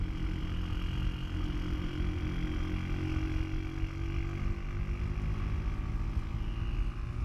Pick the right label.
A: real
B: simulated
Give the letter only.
A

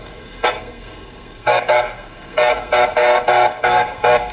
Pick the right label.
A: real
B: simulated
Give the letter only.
B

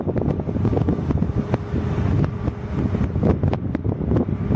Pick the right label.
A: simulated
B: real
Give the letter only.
B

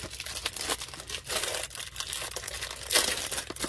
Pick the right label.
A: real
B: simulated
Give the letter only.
A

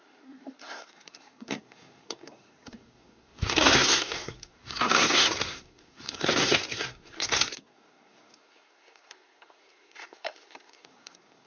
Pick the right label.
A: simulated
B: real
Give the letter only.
A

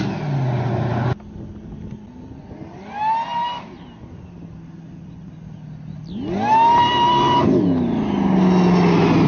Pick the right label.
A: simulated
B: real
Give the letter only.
B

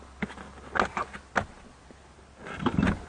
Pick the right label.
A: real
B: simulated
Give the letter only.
A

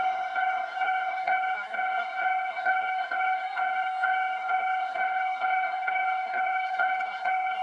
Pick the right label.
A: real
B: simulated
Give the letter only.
B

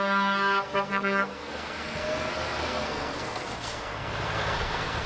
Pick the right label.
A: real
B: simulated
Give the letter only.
B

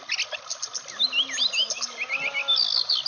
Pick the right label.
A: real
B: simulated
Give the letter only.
A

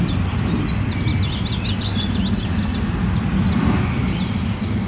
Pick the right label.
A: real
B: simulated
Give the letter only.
A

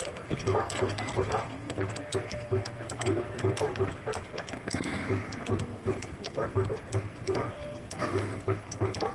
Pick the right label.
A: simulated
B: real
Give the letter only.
A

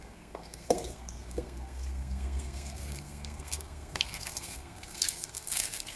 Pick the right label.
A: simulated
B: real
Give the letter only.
A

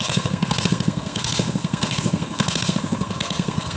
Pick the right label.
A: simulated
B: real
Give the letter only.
A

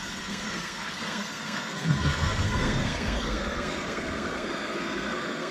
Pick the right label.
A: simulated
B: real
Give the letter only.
A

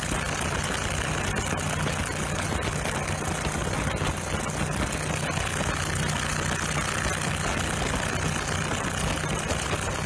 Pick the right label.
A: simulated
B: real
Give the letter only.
B